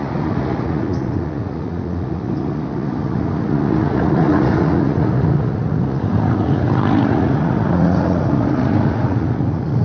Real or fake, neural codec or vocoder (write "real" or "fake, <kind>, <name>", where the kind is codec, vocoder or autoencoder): fake, vocoder, Vocos